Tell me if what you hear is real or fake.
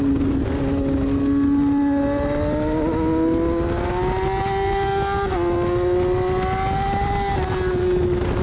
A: real